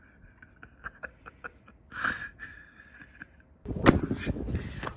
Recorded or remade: remade